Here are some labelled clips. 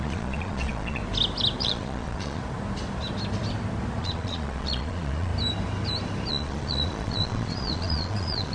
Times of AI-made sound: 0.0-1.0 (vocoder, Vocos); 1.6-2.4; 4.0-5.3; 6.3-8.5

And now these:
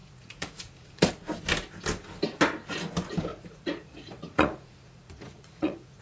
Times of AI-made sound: 0.0-1.1 (vocoder, Vocos); 3.3-6.0

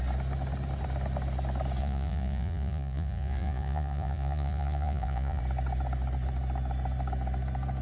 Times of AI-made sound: 1.8-5.4 (vocoder, Vocos)

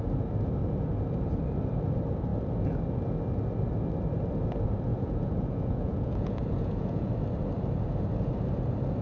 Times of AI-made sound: 4.9-7.1 (vocoder, Vocos)

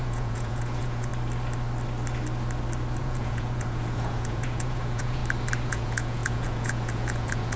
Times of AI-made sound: 0.0-1.1 (vocoder, Vocos); 3.0-5.2; 5.7-7.6